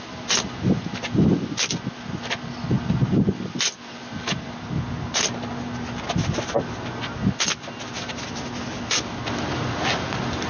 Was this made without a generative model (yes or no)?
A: yes